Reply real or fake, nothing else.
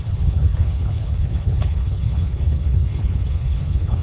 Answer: fake